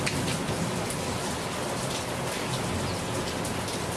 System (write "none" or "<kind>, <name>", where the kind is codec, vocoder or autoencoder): none